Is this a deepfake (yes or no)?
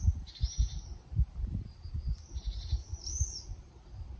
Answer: yes